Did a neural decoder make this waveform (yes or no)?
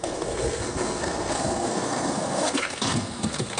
yes